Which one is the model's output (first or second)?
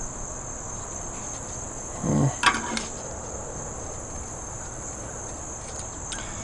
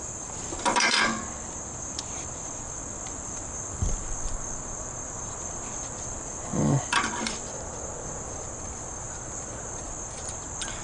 second